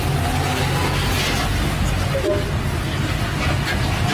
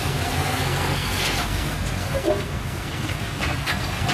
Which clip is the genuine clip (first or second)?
first